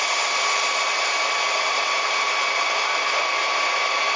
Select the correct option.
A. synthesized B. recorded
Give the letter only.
B